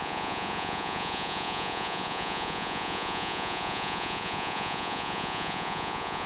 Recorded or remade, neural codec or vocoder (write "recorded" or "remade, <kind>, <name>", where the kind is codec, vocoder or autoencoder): remade, vocoder, Vocos